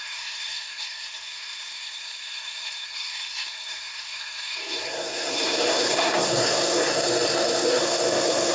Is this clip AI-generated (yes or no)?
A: yes